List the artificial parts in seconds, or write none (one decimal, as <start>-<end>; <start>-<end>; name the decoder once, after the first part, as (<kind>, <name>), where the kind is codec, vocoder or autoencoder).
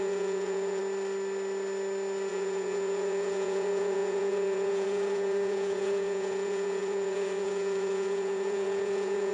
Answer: 0.0-0.8 (vocoder, Vocos); 2.3-9.3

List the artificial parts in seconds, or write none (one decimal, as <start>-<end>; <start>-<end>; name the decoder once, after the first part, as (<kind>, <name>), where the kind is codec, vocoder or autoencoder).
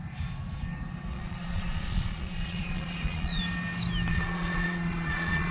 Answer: 1.1-3.4 (vocoder, Vocos); 4.1-5.5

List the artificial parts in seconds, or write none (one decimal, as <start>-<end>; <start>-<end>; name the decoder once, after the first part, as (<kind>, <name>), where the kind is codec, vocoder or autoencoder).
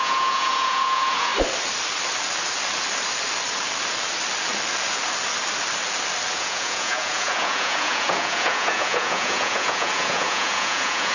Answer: 0.0-1.3 (vocoder, Vocos); 6.3-11.1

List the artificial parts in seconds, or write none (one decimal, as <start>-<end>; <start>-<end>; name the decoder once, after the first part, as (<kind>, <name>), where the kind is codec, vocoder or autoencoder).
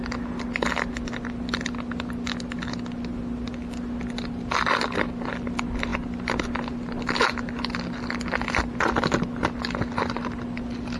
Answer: none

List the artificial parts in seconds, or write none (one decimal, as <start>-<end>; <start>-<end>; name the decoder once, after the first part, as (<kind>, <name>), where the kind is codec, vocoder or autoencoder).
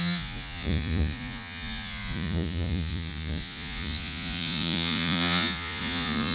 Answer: 0.0-6.3 (vocoder, Vocos)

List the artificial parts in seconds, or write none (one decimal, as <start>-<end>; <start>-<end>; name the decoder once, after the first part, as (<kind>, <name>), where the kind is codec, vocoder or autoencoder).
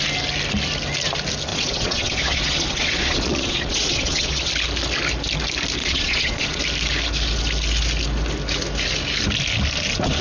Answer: 1.5-4.5 (vocoder, Vocos); 5.8-6.6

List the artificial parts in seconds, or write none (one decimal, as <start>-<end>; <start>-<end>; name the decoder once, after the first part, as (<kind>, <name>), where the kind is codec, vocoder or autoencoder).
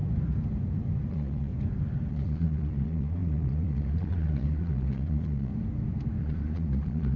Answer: 1.1-1.5 (vocoder, Vocos); 2.1-5.5; 6.2-7.2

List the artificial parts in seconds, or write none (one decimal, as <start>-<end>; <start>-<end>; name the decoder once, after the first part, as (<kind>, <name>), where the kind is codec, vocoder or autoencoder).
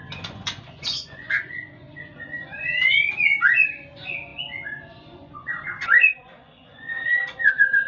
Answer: 0.0-7.9 (vocoder, Vocos)